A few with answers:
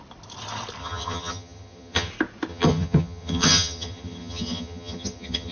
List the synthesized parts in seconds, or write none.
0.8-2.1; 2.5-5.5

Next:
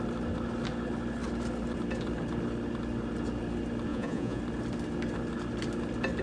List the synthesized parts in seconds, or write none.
3.9-4.4